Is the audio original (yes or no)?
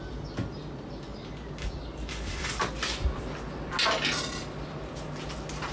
yes